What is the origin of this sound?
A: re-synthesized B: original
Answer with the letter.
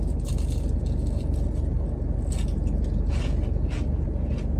B